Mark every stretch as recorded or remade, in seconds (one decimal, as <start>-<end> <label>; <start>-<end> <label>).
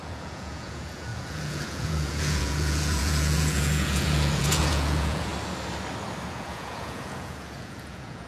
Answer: 0.0-5.3 remade; 5.3-6.3 recorded; 6.3-8.3 remade